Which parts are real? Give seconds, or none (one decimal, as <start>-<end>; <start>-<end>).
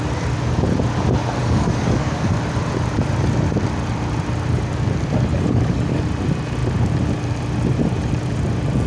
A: 0.0-1.4; 2.4-5.3; 6.0-8.9